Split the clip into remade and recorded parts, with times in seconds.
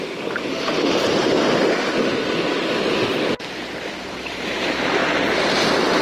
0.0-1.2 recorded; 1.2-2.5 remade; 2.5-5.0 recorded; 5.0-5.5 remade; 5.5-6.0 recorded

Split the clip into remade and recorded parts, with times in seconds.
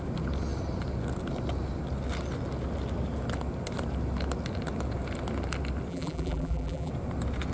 0.0-5.9 recorded; 5.9-6.9 remade; 6.9-7.5 recorded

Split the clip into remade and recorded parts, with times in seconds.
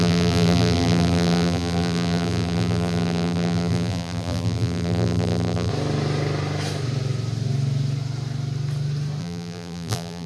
0.0-5.7 remade; 5.7-9.2 recorded; 9.2-10.3 remade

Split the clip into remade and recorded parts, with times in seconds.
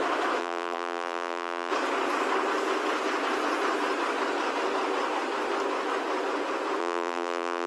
0.0-0.4 recorded; 0.4-1.7 remade; 1.7-6.8 recorded; 6.8-7.7 remade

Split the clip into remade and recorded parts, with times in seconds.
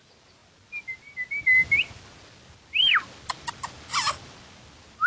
0.0-5.1 recorded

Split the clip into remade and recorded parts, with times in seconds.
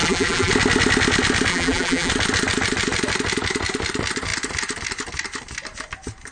0.0-0.5 remade; 0.5-1.5 recorded; 1.5-2.1 remade; 2.1-6.3 recorded